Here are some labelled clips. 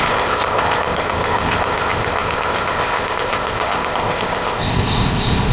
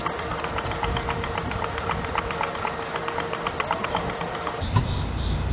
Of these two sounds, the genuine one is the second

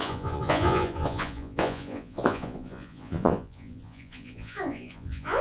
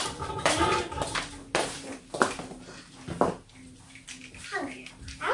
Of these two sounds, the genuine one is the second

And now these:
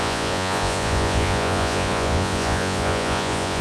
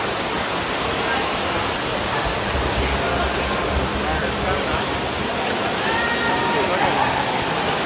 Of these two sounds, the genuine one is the second